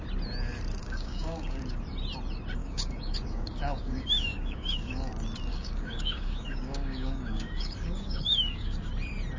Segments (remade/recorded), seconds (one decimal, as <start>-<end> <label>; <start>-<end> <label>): 0.0-0.8 recorded; 0.8-1.6 remade; 1.6-2.6 recorded; 2.6-5.1 remade; 5.1-5.5 recorded; 5.5-8.9 remade; 8.9-9.4 recorded